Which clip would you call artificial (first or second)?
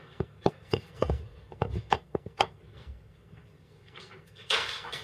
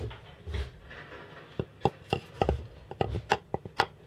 first